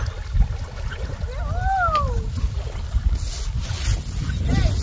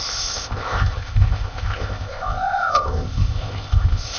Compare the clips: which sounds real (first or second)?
first